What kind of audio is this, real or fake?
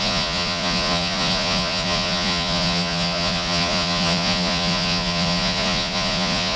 fake